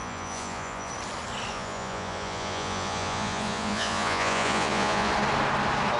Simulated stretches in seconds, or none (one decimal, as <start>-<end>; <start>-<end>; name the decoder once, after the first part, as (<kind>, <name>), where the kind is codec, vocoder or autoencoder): 0.0-0.9 (vocoder, Vocos); 1.5-5.1